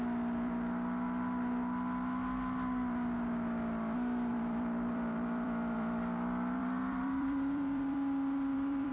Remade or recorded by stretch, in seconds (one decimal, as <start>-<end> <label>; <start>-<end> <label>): 0.0-4.3 recorded; 4.3-8.9 remade